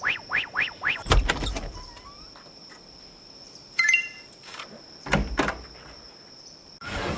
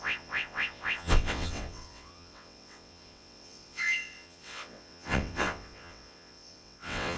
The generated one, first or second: second